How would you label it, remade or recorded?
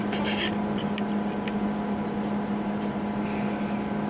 recorded